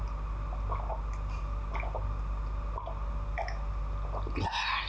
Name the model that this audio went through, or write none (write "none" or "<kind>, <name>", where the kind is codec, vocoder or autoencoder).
none